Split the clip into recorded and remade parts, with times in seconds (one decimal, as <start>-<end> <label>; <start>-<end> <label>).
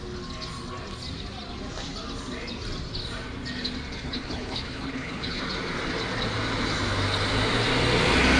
0.0-3.9 recorded; 3.9-5.4 remade; 5.4-8.4 recorded